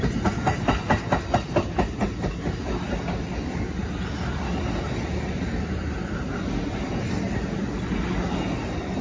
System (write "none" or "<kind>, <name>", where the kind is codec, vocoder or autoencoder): none